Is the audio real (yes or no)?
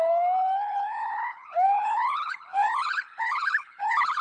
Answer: no